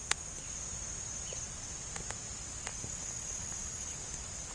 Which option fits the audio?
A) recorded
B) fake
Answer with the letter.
A